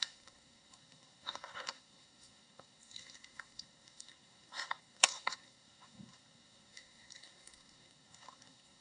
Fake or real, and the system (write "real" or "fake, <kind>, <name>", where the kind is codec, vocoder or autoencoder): fake, codec, SNAC